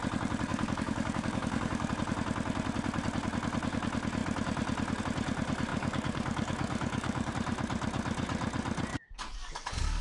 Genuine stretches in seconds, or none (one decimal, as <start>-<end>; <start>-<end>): 0.0-0.5; 1.9-5.7; 7.3-8.9

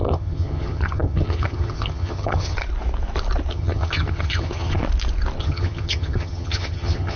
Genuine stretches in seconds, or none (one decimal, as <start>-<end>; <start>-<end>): 2.6-3.5; 4.8-5.4